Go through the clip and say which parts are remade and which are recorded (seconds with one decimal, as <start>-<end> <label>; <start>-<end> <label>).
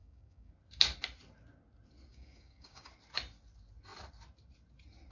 0.0-0.5 remade; 0.5-2.1 recorded; 2.1-2.9 remade; 2.9-5.1 recorded